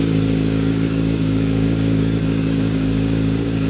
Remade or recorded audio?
remade